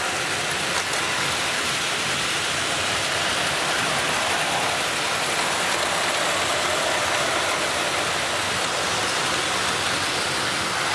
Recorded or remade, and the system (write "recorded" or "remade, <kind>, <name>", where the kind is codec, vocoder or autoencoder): recorded